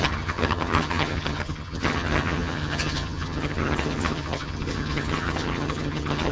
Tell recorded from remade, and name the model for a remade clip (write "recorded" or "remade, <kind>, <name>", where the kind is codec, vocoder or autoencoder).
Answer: remade, vocoder, HiFi-GAN